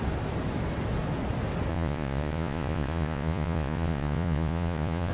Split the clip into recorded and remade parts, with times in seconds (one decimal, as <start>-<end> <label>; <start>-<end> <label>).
0.0-1.7 recorded; 1.7-5.1 remade